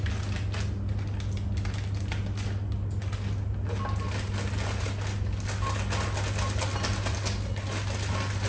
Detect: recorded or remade recorded